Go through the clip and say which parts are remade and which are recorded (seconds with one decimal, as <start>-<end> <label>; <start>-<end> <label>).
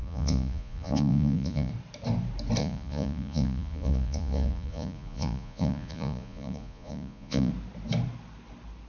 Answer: 0.0-1.7 remade; 1.7-2.6 recorded; 2.6-7.5 remade; 7.5-8.9 recorded